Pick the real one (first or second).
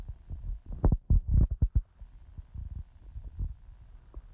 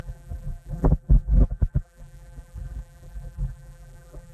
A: first